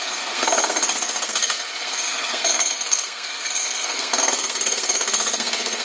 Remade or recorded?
remade